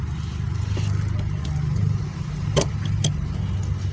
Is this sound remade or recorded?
recorded